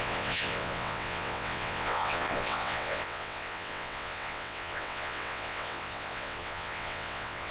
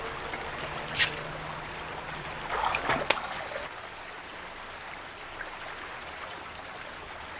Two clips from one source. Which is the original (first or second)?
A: second